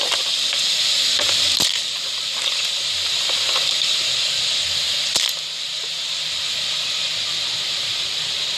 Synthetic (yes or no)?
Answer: no